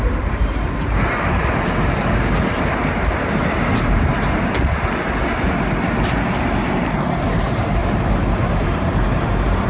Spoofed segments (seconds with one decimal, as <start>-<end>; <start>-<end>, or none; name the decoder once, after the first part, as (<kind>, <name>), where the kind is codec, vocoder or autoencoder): 0.0-4.1 (vocoder, BigVGAN v2); 6.1-9.7